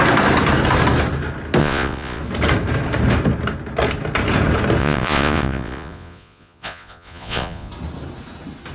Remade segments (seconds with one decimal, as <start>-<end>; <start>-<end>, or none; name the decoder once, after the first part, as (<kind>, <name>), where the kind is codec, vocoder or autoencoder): 1.6-2.2 (vocoder, Vocos); 4.8-7.7